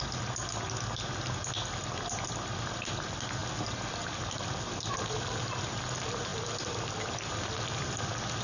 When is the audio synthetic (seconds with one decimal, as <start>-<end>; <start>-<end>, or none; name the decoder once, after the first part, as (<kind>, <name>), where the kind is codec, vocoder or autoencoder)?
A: none